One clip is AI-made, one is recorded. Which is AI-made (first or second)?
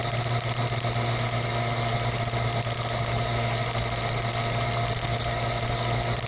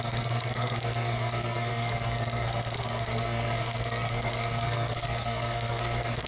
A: second